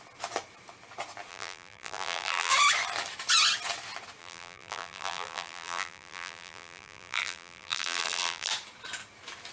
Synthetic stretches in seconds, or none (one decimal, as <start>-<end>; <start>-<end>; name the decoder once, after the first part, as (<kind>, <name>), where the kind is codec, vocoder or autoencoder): 1.3-2.5 (vocoder, BigVGAN v2); 4.2-8.5